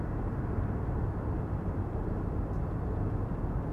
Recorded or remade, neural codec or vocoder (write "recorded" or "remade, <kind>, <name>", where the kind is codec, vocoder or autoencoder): recorded